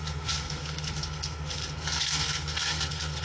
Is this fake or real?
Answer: fake